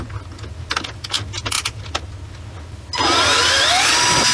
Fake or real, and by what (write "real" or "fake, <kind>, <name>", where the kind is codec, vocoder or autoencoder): real